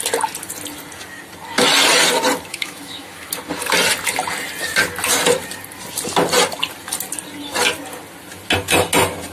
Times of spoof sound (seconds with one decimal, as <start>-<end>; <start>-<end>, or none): 2.5-3.3